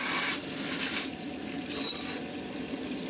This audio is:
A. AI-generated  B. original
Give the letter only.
B